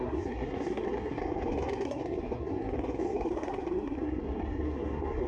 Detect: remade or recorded remade